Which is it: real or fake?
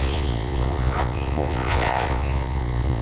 fake